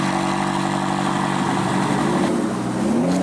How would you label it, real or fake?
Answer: real